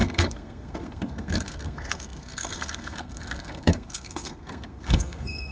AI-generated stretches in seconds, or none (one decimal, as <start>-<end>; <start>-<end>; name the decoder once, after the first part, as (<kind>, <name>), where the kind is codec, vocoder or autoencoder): 0.0-5.5 (codec, SNAC)